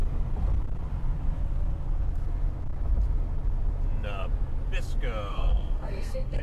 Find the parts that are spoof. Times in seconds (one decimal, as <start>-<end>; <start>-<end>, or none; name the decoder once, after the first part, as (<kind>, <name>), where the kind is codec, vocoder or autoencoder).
5.3-6.4 (codec, SNAC)